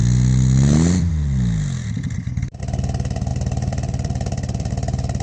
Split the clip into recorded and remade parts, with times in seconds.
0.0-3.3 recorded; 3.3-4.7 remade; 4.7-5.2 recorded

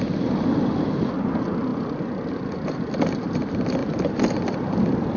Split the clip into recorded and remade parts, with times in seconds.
0.0-5.2 recorded

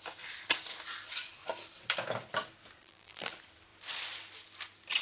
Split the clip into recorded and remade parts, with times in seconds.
0.0-2.8 recorded; 2.8-3.3 remade; 3.3-5.0 recorded

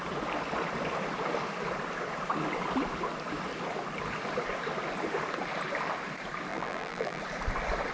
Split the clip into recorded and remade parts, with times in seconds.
0.0-6.5 recorded; 6.5-7.2 remade; 7.2-7.9 recorded

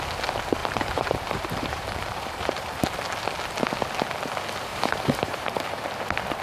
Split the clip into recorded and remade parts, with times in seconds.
0.0-0.6 recorded; 0.6-3.0 remade; 3.0-4.7 recorded; 4.7-5.8 remade; 5.8-6.4 recorded

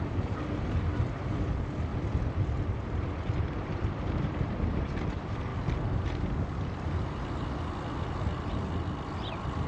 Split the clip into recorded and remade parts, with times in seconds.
0.0-1.9 remade; 1.9-3.4 recorded; 3.4-5.5 remade; 5.5-9.7 recorded